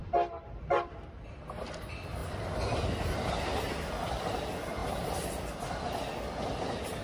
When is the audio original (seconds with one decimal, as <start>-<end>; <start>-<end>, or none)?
1.4-2.2; 2.8-7.0